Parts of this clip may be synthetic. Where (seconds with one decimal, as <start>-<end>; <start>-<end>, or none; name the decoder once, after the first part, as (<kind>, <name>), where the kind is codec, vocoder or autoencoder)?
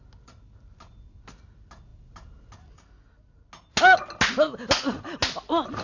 none